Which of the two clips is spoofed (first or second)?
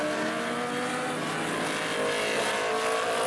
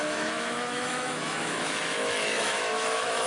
second